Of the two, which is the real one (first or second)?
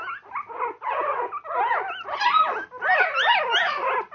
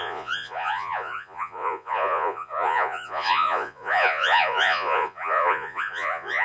first